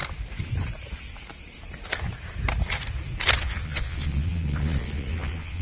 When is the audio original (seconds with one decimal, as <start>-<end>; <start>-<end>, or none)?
0.0-3.4